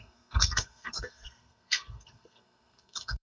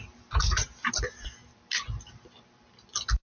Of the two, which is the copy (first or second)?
first